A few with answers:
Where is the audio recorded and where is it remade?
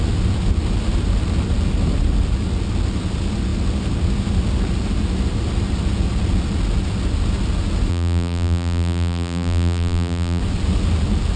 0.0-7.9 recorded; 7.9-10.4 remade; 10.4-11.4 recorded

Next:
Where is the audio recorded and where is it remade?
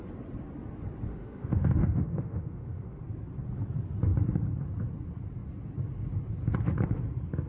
0.0-1.1 recorded; 1.1-3.0 remade; 3.0-7.5 recorded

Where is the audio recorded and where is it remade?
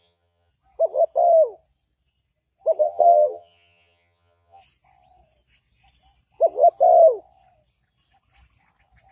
0.0-0.5 remade; 0.5-2.8 recorded; 2.8-4.6 remade; 4.6-9.1 recorded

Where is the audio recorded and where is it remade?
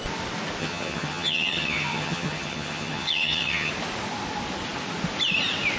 0.0-0.6 recorded; 0.6-3.7 remade; 3.7-5.8 recorded